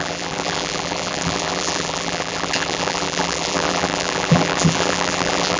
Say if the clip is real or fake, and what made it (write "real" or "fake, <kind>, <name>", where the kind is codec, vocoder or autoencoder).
fake, vocoder, BigVGAN v2